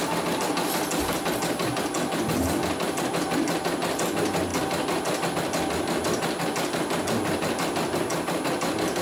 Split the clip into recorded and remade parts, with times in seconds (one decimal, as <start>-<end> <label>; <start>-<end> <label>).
0.0-9.0 recorded